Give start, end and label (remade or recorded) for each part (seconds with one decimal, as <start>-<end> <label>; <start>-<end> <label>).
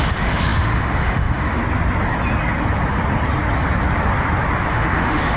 0.0-1.6 remade; 1.6-4.7 recorded; 4.7-5.4 remade